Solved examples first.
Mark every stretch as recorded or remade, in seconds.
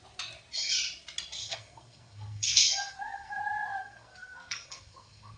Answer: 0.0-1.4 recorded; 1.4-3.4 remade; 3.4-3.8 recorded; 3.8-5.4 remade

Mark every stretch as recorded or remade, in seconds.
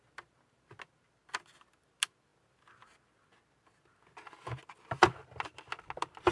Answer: 0.0-6.3 recorded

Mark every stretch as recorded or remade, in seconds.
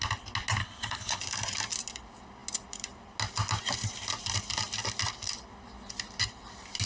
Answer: 0.0-0.6 recorded; 0.6-1.2 remade; 1.2-6.9 recorded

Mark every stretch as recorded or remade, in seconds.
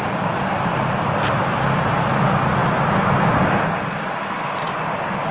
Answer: 0.0-5.3 recorded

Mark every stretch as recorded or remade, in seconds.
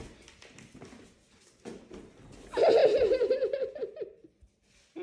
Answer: 0.0-5.0 recorded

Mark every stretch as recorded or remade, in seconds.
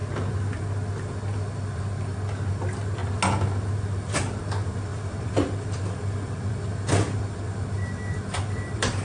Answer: 0.0-2.5 recorded; 2.5-3.0 remade; 3.0-4.0 recorded; 4.0-9.0 remade